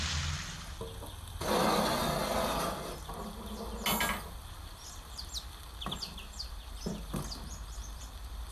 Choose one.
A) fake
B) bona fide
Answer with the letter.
B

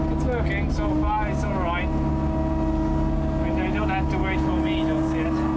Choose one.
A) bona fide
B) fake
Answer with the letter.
A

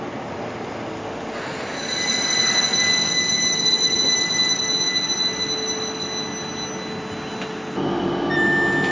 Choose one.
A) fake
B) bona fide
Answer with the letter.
B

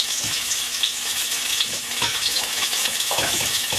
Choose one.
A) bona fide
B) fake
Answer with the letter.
B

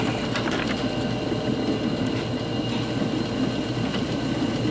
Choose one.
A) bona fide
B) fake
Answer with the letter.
A